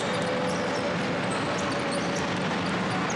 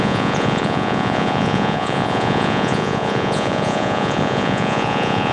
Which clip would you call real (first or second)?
first